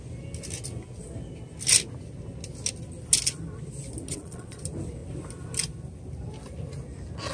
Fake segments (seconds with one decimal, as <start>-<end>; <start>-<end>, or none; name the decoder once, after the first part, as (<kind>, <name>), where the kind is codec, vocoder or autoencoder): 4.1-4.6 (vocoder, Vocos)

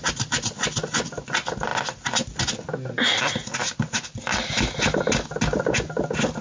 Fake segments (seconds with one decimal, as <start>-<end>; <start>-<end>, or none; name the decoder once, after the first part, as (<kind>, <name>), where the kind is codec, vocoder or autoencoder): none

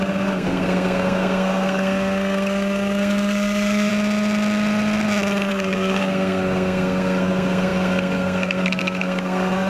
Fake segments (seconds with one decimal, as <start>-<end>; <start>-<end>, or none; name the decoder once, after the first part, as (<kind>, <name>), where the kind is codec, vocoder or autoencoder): 0.0-3.9 (codec, SNAC); 5.5-9.7